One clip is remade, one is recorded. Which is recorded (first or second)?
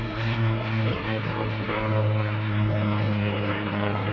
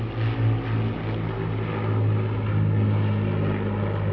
second